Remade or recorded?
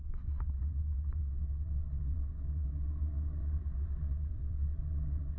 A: remade